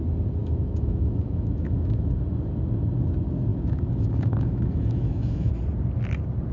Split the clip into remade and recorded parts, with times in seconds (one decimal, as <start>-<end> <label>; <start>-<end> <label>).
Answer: 0.0-0.4 recorded; 0.4-2.1 remade; 2.1-3.5 recorded; 3.5-5.5 remade; 5.5-6.5 recorded